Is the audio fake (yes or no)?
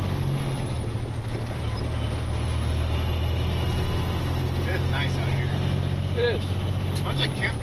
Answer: no